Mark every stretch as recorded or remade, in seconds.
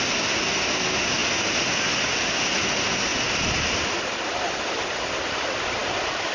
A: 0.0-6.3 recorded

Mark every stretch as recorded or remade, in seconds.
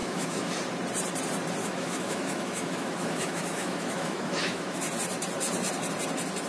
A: 0.0-0.6 remade; 0.6-1.6 recorded; 1.6-4.8 remade; 4.8-6.5 recorded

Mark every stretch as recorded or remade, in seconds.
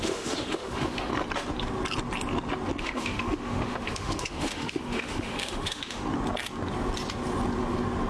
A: 0.0-1.1 remade; 1.1-2.8 recorded; 2.8-6.0 remade; 6.0-8.1 recorded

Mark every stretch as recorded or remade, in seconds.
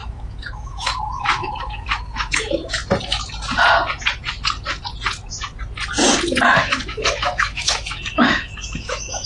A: 0.0-2.8 remade; 2.8-6.6 recorded; 6.6-9.3 remade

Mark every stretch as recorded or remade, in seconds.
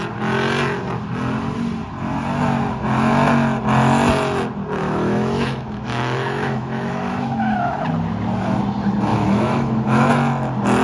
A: 0.0-4.8 recorded; 4.8-7.8 remade; 7.8-9.1 recorded; 9.1-10.1 remade; 10.1-10.8 recorded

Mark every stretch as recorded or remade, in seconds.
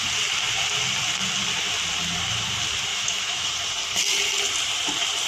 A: 0.0-2.9 recorded; 2.9-3.5 remade; 3.5-5.3 recorded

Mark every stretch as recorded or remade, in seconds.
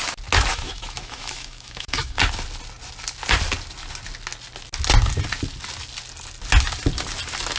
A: 0.0-0.5 recorded; 0.5-2.2 remade; 2.2-7.6 recorded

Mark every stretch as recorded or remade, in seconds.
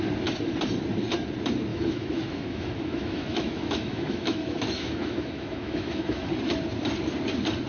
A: 0.0-1.7 recorded; 1.7-6.3 remade; 6.3-7.7 recorded